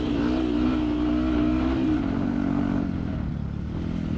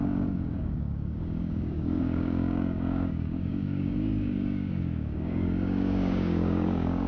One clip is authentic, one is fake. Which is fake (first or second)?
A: second